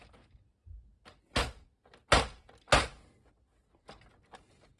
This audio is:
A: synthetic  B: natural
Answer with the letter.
B